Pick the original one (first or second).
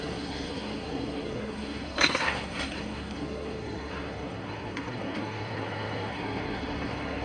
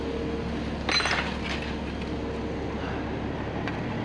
second